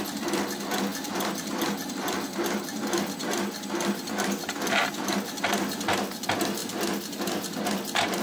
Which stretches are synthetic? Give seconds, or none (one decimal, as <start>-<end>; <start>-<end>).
none

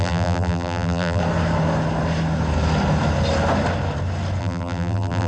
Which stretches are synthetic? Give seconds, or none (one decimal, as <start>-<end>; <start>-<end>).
0.0-1.2; 4.4-5.3